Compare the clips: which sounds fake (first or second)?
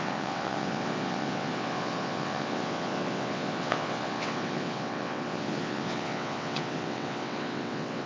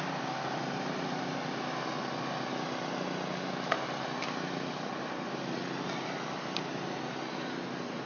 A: first